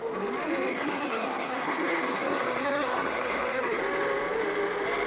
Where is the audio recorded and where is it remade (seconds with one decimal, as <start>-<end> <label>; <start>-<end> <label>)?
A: 0.0-0.7 recorded; 0.7-3.8 remade; 3.8-5.1 recorded